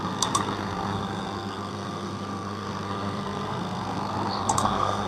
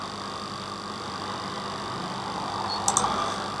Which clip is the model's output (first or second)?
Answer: first